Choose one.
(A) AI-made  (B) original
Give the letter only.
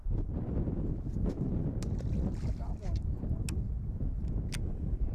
B